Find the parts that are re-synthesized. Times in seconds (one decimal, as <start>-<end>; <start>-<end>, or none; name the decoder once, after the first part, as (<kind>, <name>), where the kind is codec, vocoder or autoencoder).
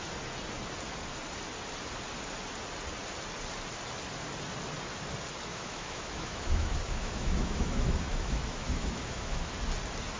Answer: 5.5-9.5 (autoencoder, DAC-VAE)